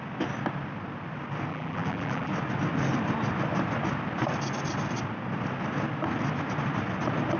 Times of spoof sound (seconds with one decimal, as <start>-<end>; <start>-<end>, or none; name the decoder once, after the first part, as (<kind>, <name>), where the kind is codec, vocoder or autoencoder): 1.5-2.3 (vocoder, BigVGAN v2)